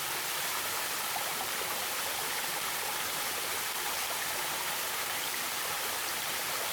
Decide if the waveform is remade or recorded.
remade